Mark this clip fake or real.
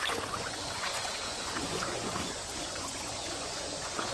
fake